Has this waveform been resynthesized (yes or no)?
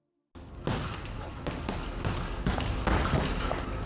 no